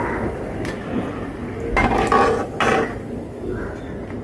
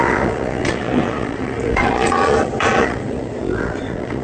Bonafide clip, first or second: first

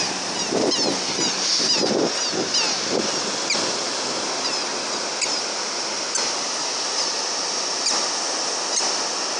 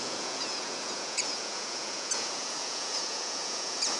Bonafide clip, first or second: first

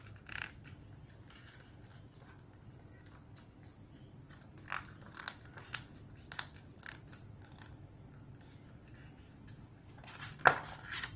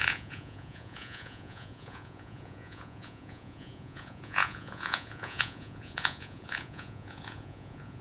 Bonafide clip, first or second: first